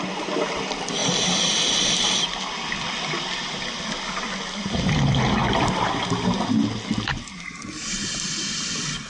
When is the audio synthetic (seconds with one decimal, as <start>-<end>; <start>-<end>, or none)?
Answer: none